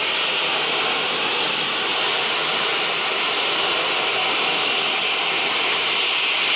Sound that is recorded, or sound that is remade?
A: recorded